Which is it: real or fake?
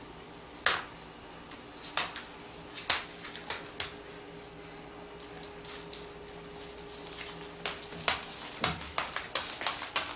real